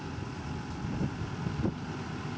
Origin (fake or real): real